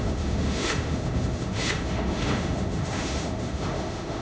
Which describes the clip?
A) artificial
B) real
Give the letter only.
A